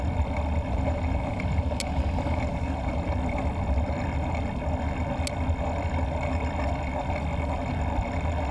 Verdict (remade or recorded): recorded